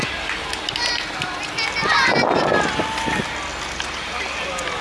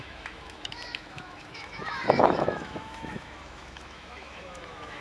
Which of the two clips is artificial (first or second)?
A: second